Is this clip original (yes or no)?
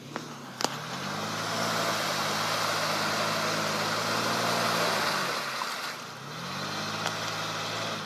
yes